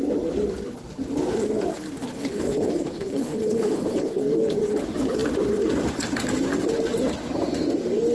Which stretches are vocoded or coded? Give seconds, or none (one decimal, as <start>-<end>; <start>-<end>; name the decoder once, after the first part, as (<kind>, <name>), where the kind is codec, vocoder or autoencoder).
2.1-4.2 (codec, HILCodec)